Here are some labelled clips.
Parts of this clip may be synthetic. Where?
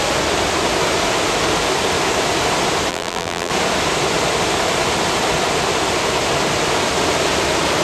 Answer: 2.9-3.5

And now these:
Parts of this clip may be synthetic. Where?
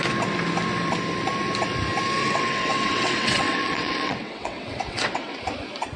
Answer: 2.2-5.4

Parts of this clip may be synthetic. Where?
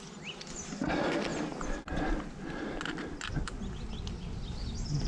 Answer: none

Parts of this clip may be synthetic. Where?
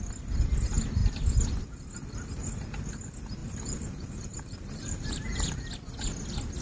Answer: 3.4-5.7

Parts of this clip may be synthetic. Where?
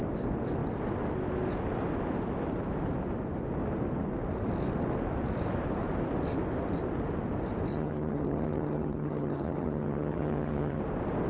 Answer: 7.7-10.8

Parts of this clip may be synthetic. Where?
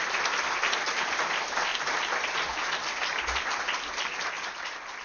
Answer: none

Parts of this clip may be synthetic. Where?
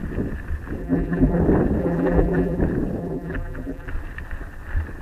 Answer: 0.8-1.4; 1.8-2.6; 3.0-3.9